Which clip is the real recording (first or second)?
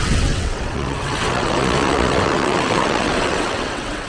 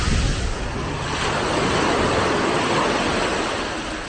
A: second